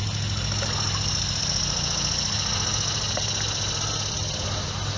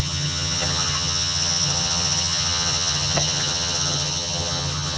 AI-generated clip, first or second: second